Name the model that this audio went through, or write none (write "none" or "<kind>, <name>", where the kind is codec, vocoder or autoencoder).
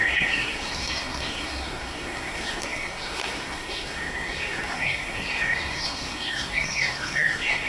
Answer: codec, SNAC